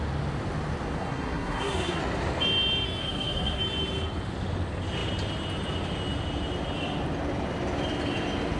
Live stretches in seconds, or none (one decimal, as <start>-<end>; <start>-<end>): 0.0-1.0; 2.0-3.0; 3.6-8.6